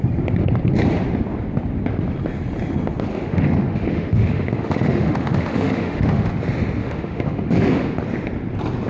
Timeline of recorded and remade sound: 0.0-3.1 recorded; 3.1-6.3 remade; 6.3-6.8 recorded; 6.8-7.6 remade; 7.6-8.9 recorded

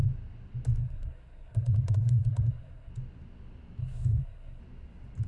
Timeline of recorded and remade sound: 0.0-0.8 recorded; 0.8-2.9 remade; 2.9-3.8 recorded; 3.8-4.6 remade; 4.6-5.3 recorded

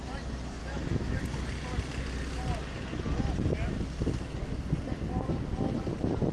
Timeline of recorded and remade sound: 0.0-0.6 recorded; 0.6-1.2 remade; 1.2-6.3 recorded

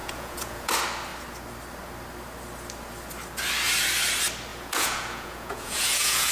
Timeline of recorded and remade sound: 0.0-0.7 remade; 0.7-4.5 recorded; 4.5-6.3 remade